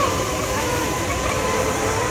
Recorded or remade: recorded